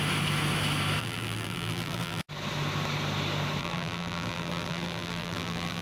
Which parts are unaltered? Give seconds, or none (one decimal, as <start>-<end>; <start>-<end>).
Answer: 0.0-1.0; 2.2-3.6